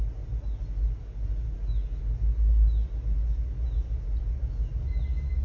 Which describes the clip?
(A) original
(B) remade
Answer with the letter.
A